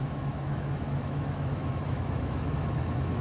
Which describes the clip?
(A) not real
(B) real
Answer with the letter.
A